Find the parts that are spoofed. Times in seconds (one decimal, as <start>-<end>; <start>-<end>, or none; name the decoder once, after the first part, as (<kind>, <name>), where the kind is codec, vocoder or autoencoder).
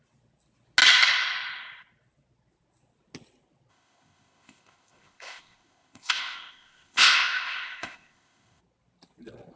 3.7-8.6 (codec, ZipCodec)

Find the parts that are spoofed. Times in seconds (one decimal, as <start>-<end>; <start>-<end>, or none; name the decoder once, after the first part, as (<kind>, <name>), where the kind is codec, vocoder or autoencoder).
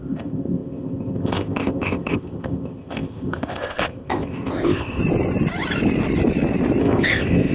0.0-5.0 (codec, ZipCodec); 6.8-7.5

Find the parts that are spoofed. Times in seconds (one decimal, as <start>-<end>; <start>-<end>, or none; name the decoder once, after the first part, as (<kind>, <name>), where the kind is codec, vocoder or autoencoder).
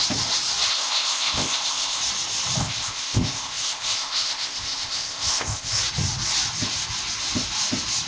0.7-2.0 (codec, ZipCodec); 2.6-5.8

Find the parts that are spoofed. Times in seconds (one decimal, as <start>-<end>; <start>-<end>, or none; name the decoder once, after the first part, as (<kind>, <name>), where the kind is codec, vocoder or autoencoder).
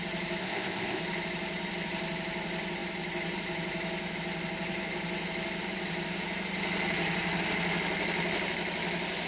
0.4-1.0 (codec, ZipCodec)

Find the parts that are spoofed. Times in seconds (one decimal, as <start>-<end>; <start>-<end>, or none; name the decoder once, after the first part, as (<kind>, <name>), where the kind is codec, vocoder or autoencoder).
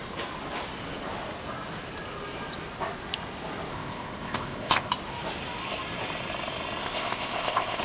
3.7-4.9 (codec, ZipCodec); 6.8-7.8